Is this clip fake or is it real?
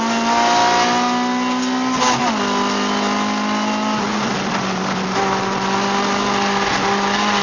real